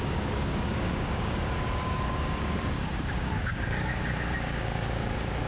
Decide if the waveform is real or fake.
fake